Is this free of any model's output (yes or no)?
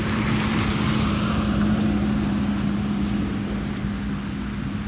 yes